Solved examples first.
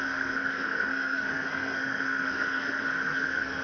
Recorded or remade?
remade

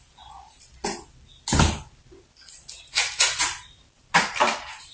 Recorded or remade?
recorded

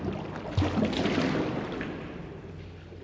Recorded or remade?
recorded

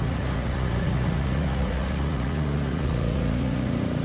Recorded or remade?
remade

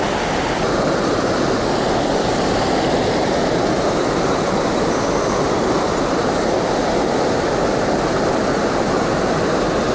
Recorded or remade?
recorded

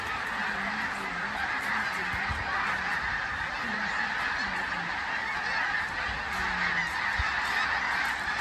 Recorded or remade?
recorded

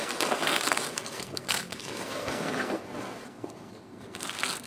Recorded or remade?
remade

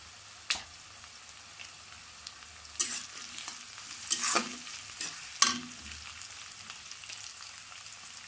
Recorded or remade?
recorded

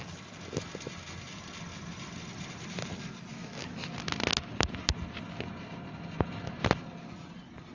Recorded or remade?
recorded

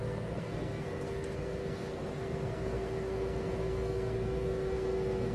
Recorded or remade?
remade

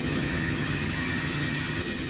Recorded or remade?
remade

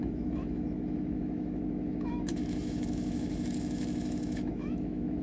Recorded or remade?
remade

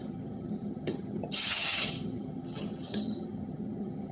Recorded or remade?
remade